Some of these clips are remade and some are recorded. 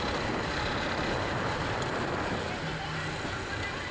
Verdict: recorded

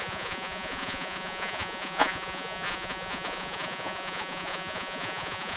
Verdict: remade